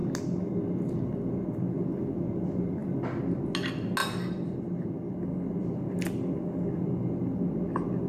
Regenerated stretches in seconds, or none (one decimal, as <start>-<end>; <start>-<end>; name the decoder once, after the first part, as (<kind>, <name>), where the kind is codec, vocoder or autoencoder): none